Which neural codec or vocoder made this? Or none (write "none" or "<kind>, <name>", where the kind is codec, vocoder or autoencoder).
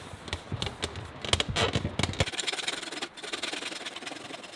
none